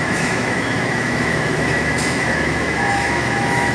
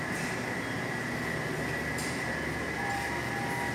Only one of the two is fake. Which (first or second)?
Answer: first